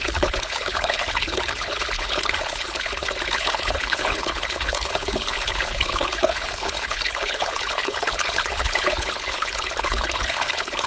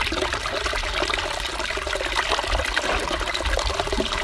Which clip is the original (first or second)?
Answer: second